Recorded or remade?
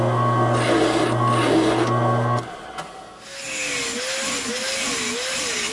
recorded